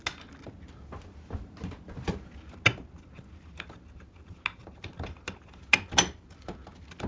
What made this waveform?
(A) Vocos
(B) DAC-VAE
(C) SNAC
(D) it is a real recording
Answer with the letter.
D